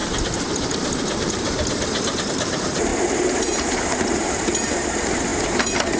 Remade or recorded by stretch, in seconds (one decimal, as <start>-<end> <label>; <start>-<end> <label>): 0.0-6.0 remade